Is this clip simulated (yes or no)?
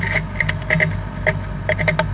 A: no